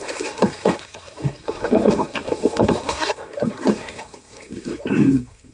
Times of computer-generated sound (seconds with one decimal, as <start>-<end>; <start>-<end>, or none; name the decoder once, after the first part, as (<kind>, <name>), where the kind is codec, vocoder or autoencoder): 0.0-5.5 (codec, SNAC)